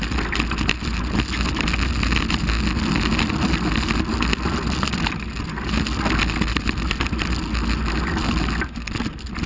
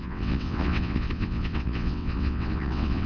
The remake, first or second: second